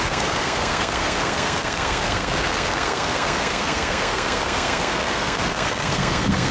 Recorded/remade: remade